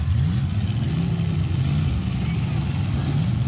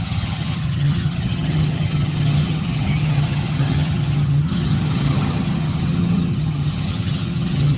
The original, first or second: first